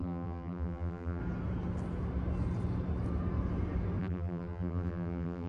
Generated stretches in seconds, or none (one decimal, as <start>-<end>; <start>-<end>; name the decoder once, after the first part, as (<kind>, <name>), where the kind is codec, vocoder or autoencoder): 0.0-1.2 (vocoder, BigVGAN v2); 4.0-5.5